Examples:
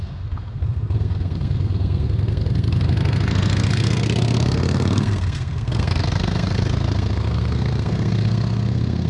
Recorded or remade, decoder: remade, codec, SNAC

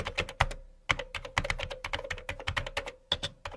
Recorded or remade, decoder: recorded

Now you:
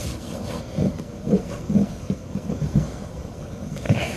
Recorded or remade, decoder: remade, codec, SNAC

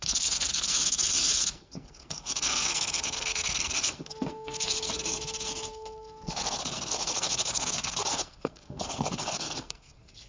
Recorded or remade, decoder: remade, codec, SNAC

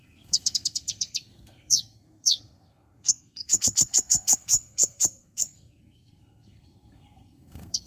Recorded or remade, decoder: remade, codec, SNAC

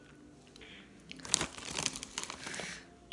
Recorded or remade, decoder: recorded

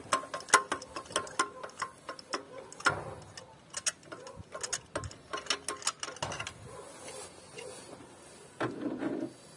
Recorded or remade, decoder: recorded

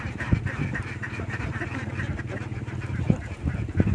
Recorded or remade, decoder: recorded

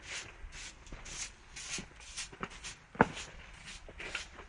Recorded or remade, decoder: recorded